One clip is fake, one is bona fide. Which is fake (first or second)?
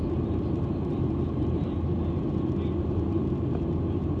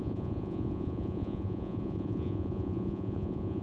second